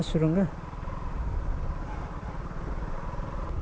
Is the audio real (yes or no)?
yes